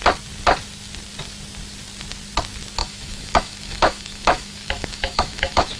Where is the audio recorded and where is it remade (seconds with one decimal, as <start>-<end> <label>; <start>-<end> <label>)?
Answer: 0.0-2.8 recorded; 2.8-5.8 remade